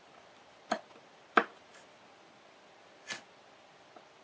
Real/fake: real